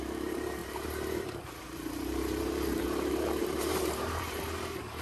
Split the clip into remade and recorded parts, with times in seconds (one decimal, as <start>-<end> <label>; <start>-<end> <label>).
0.0-5.0 remade